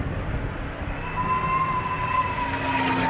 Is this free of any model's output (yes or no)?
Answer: yes